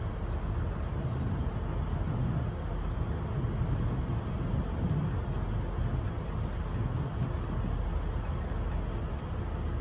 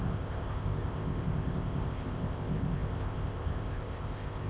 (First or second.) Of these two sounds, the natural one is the first